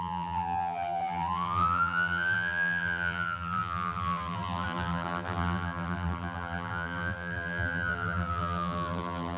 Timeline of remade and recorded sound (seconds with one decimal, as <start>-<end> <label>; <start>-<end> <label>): 0.0-9.4 remade